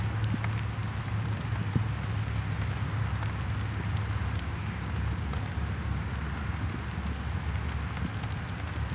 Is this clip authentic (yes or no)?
yes